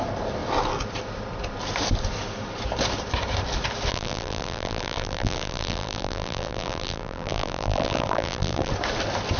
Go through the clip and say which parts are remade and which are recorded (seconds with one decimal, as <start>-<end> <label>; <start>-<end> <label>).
0.0-3.9 recorded; 3.9-8.7 remade; 8.7-9.4 recorded